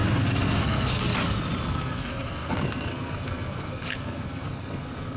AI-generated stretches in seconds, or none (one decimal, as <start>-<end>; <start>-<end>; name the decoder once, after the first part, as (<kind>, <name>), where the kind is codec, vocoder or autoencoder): 0.6-1.0 (codec, SNAC); 1.6-5.2